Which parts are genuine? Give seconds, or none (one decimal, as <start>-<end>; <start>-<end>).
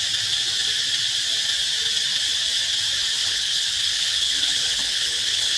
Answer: 0.0-3.2